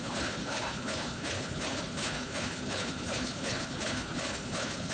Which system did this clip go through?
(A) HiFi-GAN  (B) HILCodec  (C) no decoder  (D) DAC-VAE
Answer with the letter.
B